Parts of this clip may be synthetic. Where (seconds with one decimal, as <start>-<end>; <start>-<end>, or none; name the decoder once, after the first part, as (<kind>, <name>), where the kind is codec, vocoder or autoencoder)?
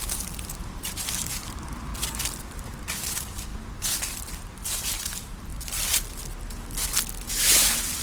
0.0-1.9 (vocoder, BigVGAN v2); 2.4-3.5; 4.4-5.5; 7.3-8.0